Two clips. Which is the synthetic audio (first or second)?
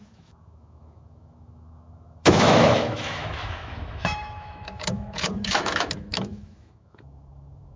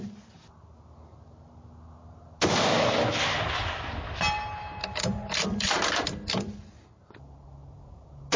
first